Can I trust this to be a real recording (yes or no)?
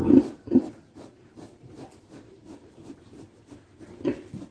yes